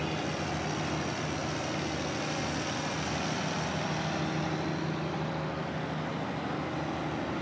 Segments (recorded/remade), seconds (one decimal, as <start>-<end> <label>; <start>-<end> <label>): 0.0-7.4 recorded